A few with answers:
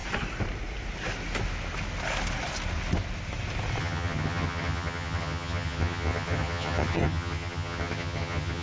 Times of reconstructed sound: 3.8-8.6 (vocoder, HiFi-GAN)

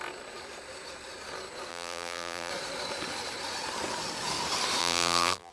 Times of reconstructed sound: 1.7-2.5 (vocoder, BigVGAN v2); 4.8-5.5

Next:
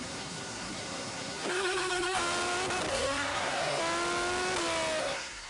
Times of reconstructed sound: 0.0-2.2 (codec, SNAC); 2.9-3.8; 5.0-5.5

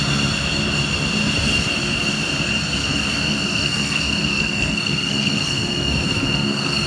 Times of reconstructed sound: 2.8-6.9 (codec, SNAC)

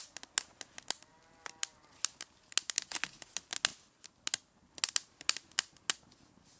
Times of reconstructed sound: none